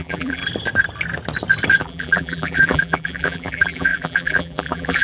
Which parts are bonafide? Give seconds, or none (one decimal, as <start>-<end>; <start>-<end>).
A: 0.4-1.8